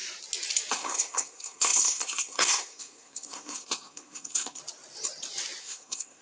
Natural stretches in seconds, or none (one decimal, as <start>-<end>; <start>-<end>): 0.0-0.7; 4.6-5.6